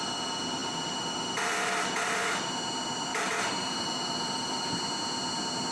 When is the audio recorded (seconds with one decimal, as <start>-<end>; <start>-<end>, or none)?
0.0-3.1; 4.7-5.7

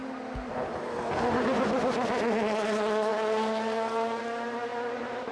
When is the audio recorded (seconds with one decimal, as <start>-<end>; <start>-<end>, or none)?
0.0-5.3

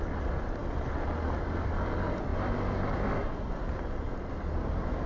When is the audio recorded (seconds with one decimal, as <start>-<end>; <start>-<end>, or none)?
2.3-5.1